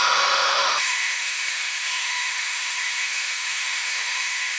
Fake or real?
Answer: fake